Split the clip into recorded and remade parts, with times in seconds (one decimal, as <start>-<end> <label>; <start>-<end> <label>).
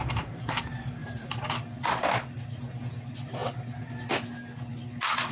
0.0-3.4 remade; 3.4-4.7 recorded; 4.7-5.3 remade